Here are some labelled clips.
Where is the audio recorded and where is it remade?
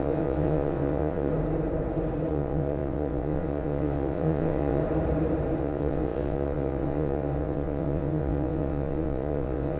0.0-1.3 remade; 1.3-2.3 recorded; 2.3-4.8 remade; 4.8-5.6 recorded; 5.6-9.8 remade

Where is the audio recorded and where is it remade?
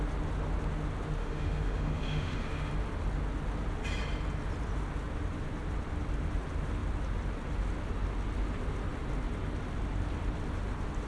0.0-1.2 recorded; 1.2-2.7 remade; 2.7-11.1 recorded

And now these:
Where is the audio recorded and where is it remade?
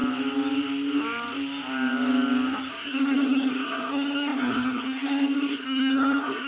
0.0-2.7 recorded; 2.7-6.5 remade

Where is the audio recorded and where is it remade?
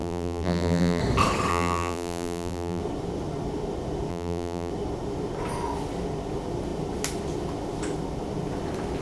0.0-1.0 remade; 1.0-1.5 recorded; 1.5-2.8 remade; 2.8-4.1 recorded; 4.1-4.7 remade; 4.7-9.0 recorded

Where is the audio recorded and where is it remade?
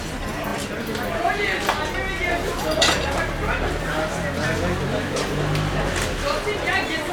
0.0-7.1 recorded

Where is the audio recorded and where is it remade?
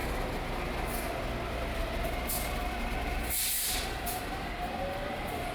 0.0-5.5 recorded